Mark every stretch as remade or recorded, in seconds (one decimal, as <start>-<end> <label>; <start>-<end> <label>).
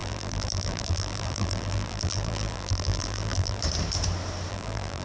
0.0-3.6 remade; 3.6-4.5 recorded; 4.5-5.0 remade